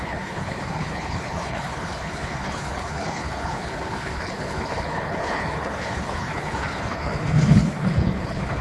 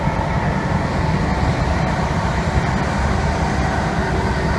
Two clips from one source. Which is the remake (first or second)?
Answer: first